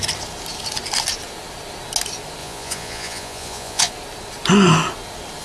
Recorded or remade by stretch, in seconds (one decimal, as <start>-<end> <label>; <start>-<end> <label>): 0.0-2.4 recorded; 2.4-3.9 remade; 3.9-5.4 recorded